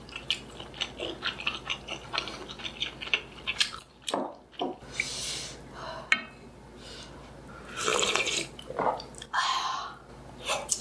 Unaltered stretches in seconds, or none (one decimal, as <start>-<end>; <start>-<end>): 0.0-3.5; 4.5-7.9; 8.9-10.8